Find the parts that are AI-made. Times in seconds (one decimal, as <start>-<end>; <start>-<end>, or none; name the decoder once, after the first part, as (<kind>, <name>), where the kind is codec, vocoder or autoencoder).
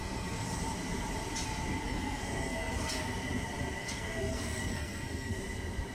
0.0-0.6 (codec, SNAC); 1.9-2.9; 3.8-5.4